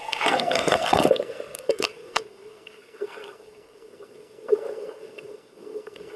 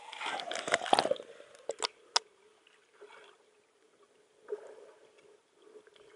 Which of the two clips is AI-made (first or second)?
first